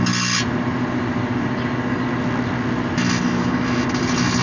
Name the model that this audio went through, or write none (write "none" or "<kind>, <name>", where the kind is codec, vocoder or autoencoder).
none